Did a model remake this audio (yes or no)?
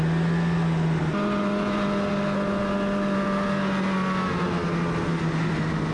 no